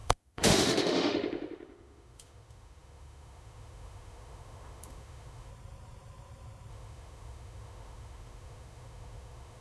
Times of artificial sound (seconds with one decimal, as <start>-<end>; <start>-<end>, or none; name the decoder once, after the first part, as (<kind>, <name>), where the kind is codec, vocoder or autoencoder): 0.0-5.5 (autoencoder, DAC-VAE); 6.7-9.6